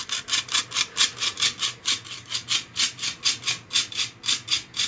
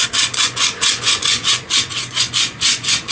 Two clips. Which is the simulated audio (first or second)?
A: second